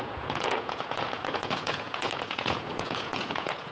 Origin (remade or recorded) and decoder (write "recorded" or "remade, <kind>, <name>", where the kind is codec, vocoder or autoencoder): remade, vocoder, Vocos